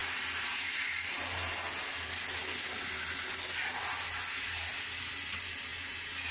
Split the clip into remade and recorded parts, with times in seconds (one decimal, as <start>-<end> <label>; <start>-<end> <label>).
0.0-6.3 recorded